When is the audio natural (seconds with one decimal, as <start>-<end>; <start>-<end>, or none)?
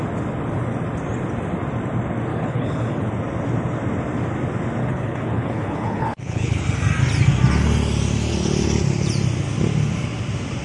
0.0-2.3; 3.1-4.8; 6.6-10.6